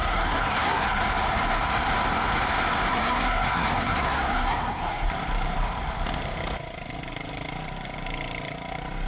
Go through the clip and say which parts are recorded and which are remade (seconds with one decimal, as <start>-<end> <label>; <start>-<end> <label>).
0.0-1.0 remade; 1.0-2.9 recorded; 2.9-5.1 remade; 5.1-9.1 recorded